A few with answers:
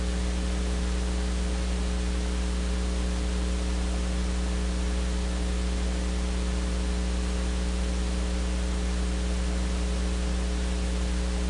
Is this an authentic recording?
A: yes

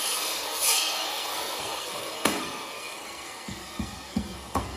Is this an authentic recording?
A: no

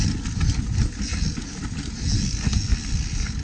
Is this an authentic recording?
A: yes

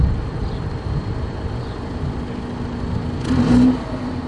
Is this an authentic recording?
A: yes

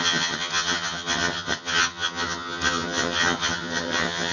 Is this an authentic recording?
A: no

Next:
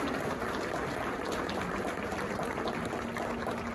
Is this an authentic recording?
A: yes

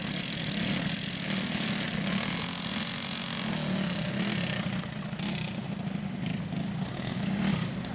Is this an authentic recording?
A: yes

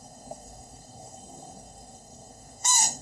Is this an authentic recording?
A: no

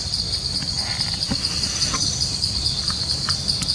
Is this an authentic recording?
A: yes